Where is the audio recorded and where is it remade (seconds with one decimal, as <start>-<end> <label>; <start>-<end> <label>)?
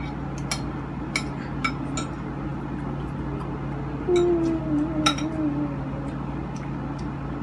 0.0-7.4 recorded